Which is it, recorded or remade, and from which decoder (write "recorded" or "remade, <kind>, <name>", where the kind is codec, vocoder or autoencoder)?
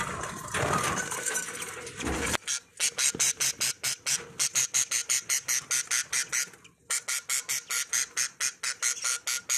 recorded